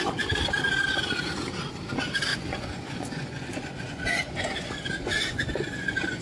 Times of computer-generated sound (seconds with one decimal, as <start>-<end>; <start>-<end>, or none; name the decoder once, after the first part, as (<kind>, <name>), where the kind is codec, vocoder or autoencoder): 2.3-6.2 (vocoder, Vocos)